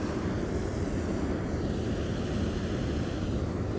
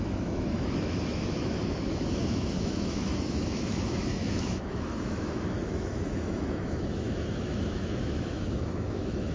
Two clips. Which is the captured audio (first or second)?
first